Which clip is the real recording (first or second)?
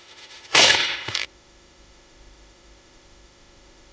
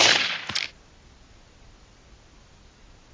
second